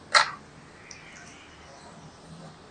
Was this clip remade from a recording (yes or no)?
no